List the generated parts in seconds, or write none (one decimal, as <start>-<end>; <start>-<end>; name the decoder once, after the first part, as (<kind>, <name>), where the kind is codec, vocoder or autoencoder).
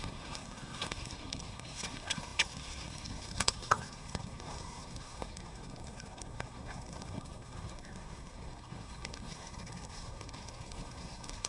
0.0-11.5 (codec, SNAC)